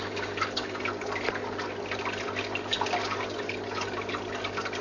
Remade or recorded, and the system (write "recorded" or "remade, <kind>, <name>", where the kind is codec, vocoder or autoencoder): recorded